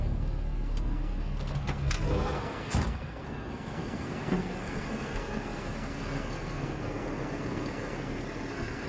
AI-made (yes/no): yes